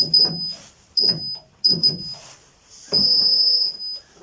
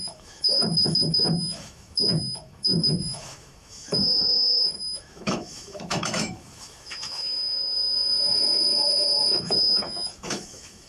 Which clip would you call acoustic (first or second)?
first